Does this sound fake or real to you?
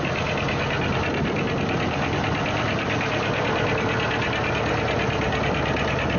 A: real